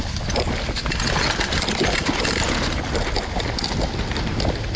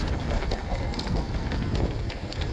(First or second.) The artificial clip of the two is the second